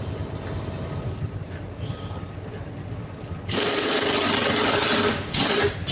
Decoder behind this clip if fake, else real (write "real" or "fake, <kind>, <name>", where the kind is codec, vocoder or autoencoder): real